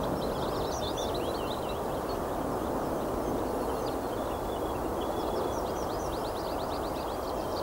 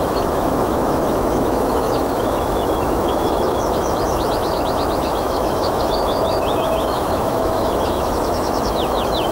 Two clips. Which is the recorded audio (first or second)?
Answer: first